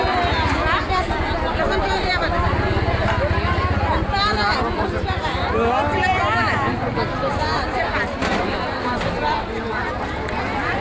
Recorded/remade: recorded